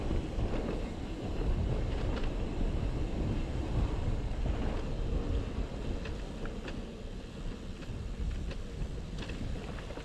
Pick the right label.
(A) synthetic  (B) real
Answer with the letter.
B